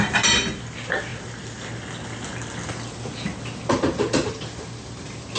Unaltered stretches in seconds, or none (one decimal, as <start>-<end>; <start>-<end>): 0.0-5.4